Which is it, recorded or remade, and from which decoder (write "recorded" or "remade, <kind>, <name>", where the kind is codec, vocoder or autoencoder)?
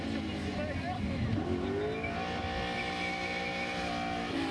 recorded